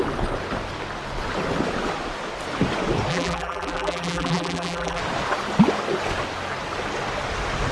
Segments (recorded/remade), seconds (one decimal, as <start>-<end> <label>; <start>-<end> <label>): 0.0-3.1 recorded; 3.1-5.0 remade; 5.0-7.7 recorded